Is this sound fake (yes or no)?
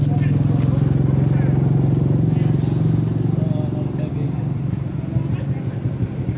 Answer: no